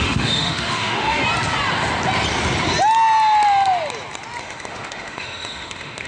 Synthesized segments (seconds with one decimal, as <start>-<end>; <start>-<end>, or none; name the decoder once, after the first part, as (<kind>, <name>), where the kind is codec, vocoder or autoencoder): 0.0-1.2 (autoencoder, DAC-VAE); 4.4-6.1